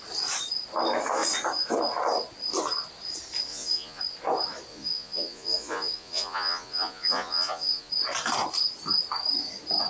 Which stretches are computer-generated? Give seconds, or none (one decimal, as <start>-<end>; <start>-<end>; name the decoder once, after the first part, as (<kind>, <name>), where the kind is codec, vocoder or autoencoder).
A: 3.5-4.0 (vocoder, Vocos); 4.7-7.9